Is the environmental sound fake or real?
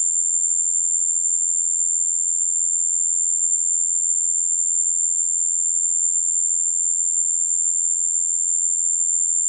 fake